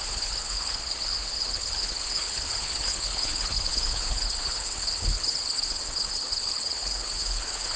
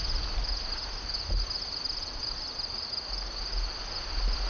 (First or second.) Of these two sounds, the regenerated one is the first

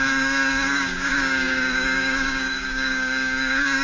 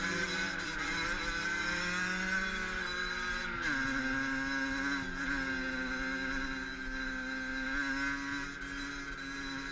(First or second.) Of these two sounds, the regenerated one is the first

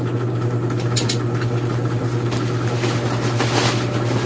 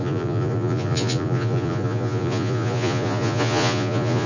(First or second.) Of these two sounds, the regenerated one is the second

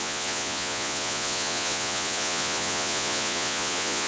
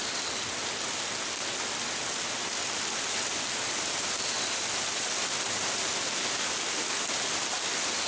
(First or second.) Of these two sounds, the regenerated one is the first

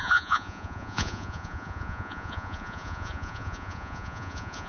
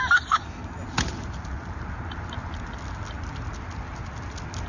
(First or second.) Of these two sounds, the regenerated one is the first